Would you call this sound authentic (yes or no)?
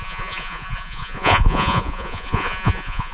no